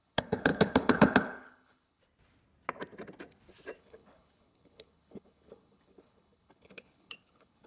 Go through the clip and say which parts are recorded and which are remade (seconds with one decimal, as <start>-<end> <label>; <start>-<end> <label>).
0.0-2.0 remade; 2.0-3.8 recorded; 3.8-7.7 remade